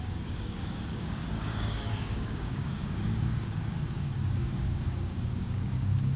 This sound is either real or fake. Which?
fake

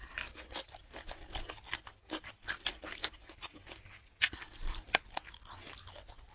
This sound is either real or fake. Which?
real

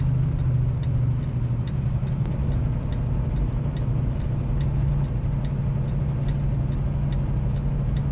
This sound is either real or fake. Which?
real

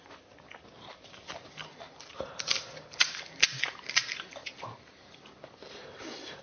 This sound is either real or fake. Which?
fake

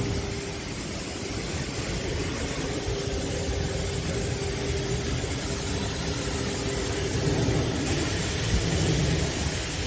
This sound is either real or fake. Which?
real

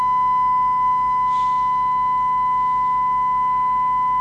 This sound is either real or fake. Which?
real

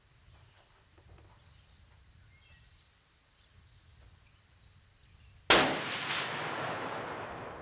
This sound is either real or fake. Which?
real